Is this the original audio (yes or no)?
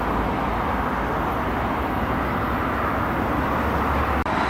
yes